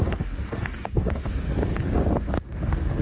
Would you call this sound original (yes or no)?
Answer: no